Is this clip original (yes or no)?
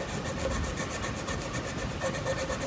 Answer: yes